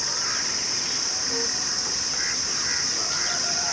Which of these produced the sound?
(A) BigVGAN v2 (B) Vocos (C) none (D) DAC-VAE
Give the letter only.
C